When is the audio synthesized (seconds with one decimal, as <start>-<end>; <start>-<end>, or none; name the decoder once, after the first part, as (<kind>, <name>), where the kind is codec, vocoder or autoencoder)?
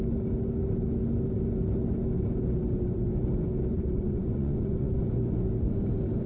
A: 4.0-4.9 (vocoder, Vocos)